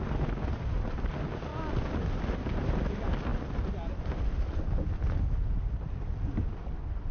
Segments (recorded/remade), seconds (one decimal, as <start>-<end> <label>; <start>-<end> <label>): 0.0-7.1 recorded